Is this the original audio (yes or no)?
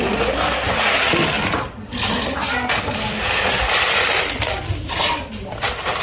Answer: yes